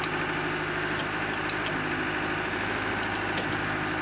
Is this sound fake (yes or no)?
no